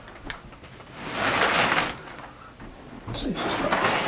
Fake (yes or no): no